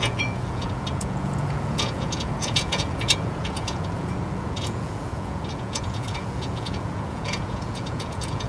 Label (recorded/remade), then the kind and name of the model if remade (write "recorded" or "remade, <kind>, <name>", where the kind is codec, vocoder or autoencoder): remade, vocoder, Vocos